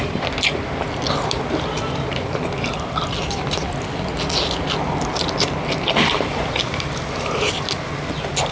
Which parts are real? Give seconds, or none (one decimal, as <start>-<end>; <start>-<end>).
0.0-8.5